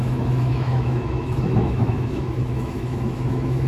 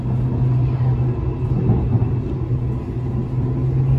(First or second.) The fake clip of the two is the first